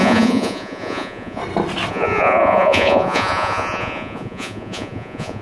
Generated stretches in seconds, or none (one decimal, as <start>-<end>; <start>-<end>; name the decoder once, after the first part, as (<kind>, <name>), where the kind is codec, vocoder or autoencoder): 0.0-1.4 (vocoder, Vocos); 1.9-5.4